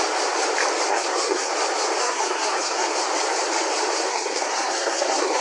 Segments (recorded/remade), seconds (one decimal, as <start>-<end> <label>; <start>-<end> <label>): 0.0-0.9 recorded; 0.9-1.5 remade; 1.5-2.0 recorded; 2.0-2.9 remade; 2.9-4.1 recorded; 4.1-5.4 remade